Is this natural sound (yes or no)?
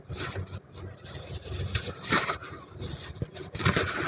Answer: yes